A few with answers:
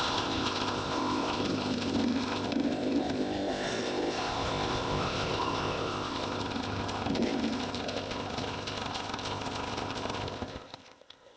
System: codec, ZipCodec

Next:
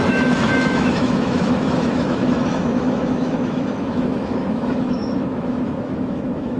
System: autoencoder, DAC-VAE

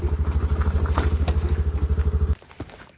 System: none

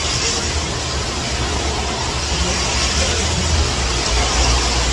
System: none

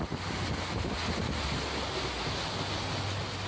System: none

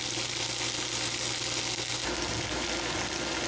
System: none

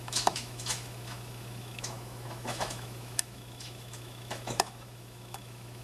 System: autoencoder, DAC-VAE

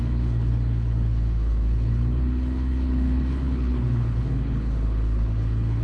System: codec, HILCodec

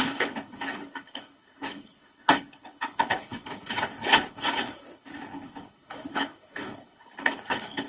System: codec, HILCodec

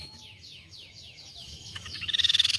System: autoencoder, DAC-VAE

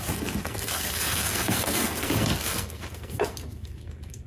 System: codec, SNAC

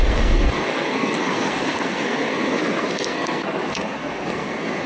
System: codec, SNAC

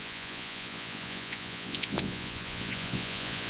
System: vocoder, Vocos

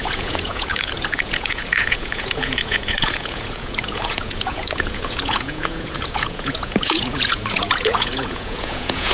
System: vocoder, Vocos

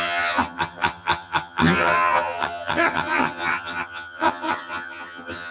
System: vocoder, HiFi-GAN